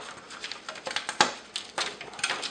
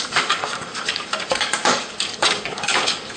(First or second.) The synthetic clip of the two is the second